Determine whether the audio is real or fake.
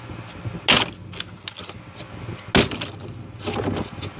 real